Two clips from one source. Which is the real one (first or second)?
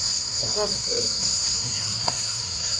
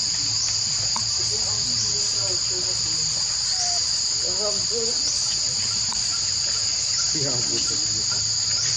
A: second